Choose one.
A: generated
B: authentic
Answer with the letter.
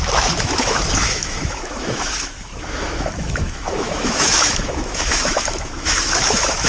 A